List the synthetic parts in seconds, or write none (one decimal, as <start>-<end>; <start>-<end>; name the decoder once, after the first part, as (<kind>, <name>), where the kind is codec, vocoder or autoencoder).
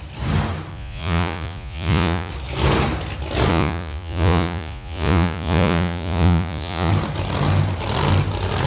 0.7-2.3 (vocoder, Vocos); 3.5-6.9